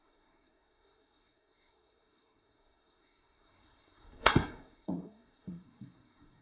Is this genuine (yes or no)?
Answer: no